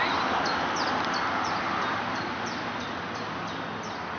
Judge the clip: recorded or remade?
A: recorded